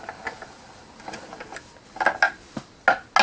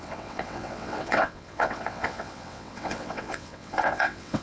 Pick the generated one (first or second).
second